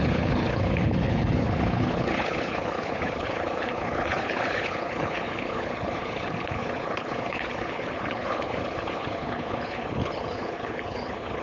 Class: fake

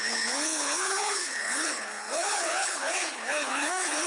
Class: fake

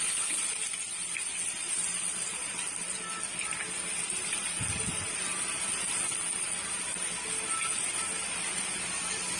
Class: real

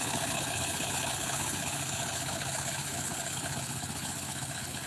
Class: fake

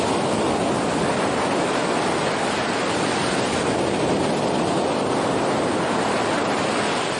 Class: real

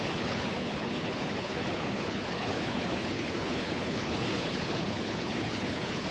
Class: fake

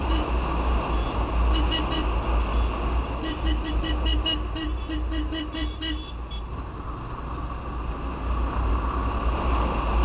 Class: real